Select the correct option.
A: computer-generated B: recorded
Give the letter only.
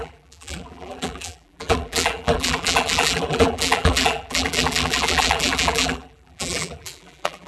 A